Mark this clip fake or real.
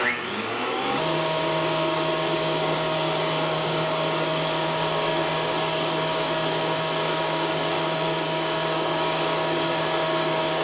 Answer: fake